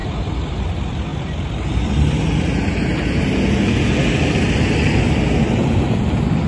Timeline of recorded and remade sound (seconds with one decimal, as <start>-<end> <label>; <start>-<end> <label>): 0.0-6.5 recorded